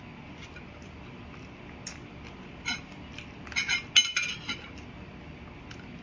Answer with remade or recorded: recorded